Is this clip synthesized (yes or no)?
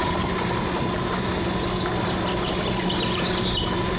no